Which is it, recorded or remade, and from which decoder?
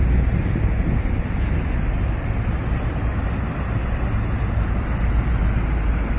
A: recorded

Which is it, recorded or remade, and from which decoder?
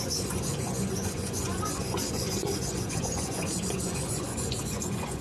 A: remade, vocoder, Vocos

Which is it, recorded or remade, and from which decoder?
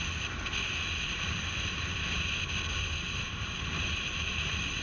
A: recorded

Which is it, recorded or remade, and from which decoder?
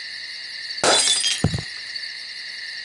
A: recorded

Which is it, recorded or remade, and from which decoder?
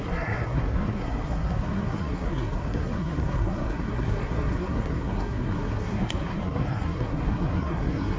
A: remade, codec, SNAC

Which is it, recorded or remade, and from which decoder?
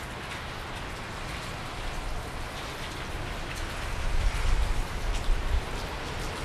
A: recorded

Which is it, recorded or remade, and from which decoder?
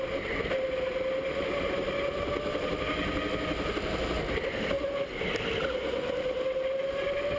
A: recorded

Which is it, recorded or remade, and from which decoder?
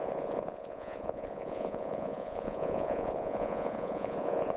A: remade, vocoder, Vocos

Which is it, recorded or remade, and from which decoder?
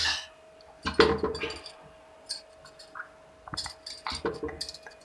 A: recorded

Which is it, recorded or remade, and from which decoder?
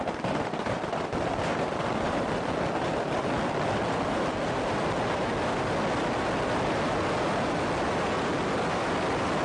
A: recorded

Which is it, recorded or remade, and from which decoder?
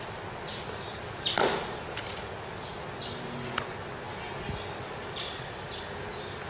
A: recorded